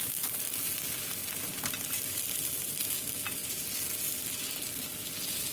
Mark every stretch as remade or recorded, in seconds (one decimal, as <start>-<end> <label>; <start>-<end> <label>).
0.0-5.5 recorded